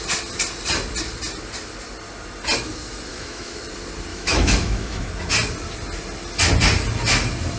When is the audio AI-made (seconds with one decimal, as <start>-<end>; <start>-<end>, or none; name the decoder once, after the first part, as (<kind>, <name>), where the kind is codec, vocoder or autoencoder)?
3.1-3.6 (autoencoder, DAC-VAE); 4.1-5.1

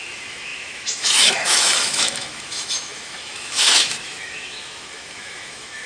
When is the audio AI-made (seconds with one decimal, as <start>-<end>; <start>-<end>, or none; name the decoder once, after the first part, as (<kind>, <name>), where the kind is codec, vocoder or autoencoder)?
0.0-5.9 (autoencoder, DAC-VAE)

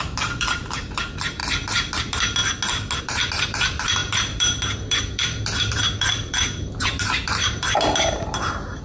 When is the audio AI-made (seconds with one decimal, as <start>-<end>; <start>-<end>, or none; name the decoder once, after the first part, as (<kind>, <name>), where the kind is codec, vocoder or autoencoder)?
0.0-1.4 (vocoder, BigVGAN v2); 2.0-2.4; 3.0-8.8